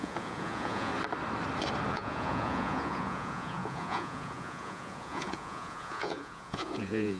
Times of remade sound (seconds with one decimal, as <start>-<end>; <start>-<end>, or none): 0.0-0.9; 1.9-7.2